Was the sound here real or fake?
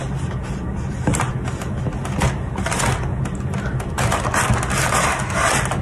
real